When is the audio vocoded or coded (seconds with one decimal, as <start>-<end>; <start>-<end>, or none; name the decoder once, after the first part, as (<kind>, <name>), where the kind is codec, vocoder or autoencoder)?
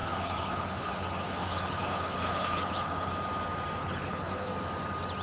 0.0-3.1 (codec, HILCodec); 3.8-4.5